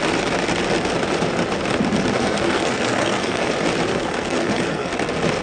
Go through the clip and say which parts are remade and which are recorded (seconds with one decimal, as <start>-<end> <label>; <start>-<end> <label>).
0.0-2.1 recorded; 2.1-3.5 remade; 3.5-3.9 recorded; 3.9-4.9 remade; 4.9-5.4 recorded